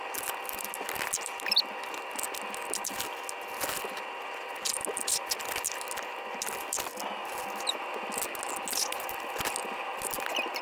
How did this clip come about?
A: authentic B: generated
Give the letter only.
A